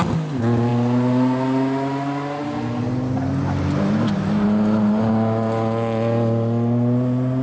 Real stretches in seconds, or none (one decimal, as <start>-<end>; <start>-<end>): 0.0-7.4